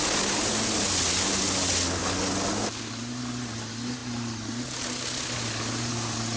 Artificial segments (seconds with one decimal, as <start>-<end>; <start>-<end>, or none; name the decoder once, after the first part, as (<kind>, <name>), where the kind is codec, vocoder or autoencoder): none